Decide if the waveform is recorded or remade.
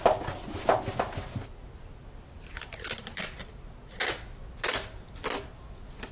recorded